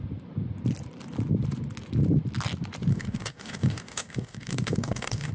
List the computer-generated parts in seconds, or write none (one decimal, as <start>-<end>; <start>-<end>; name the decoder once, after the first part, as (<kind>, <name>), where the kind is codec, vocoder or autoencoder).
2.9-5.3 (codec, DAC)